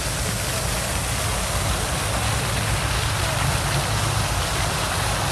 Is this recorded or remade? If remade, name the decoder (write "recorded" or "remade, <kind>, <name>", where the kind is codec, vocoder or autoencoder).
recorded